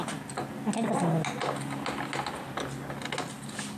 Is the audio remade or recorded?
recorded